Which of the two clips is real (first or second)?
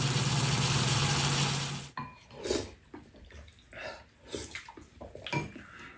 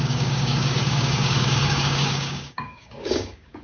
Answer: first